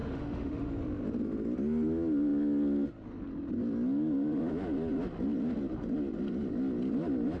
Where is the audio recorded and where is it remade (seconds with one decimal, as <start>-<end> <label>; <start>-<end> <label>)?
0.0-0.7 remade; 0.7-7.4 recorded